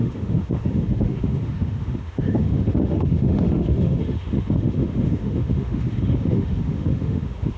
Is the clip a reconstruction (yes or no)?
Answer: yes